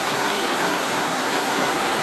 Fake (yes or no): yes